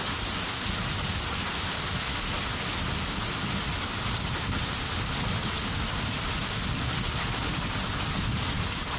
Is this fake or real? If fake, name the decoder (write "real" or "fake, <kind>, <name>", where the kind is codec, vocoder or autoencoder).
real